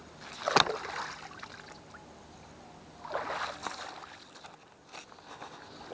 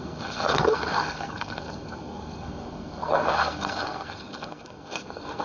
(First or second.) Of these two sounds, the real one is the first